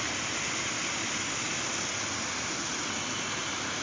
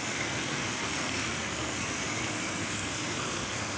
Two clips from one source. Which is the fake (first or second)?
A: second